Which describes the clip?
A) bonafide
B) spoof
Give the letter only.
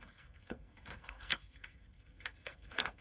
B